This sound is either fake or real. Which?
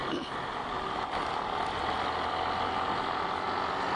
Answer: real